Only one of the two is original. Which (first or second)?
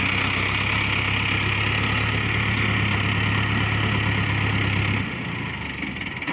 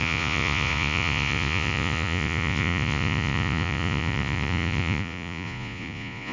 first